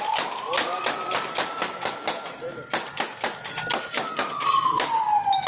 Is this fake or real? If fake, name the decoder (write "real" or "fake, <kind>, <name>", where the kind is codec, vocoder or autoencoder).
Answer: real